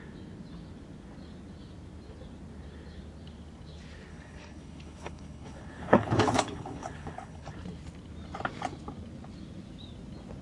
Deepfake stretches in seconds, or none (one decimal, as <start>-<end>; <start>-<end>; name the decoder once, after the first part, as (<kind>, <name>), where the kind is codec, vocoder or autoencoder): 4.1-7.5 (codec, HILCodec)